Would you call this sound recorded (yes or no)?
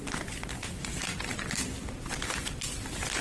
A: no